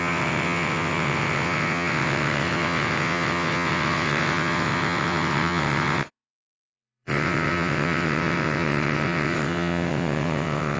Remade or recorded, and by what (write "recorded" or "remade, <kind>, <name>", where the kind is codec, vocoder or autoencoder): remade, vocoder, WaveNeXt